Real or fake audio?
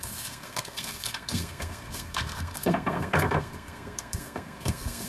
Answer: fake